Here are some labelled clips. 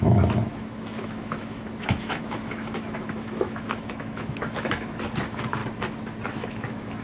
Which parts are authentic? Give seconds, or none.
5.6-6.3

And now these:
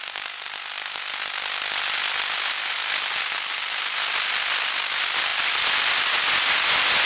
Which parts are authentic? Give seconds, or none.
0.0-7.1

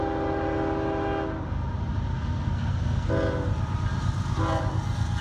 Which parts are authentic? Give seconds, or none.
0.0-2.1; 3.1-5.2